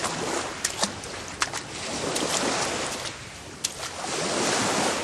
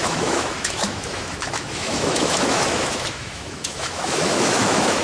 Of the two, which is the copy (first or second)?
second